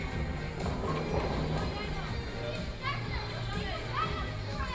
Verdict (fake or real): real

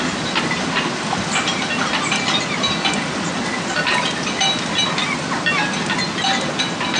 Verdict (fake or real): real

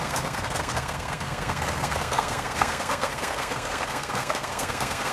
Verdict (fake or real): fake